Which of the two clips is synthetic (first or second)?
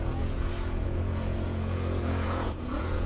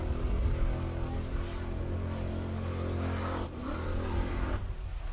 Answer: first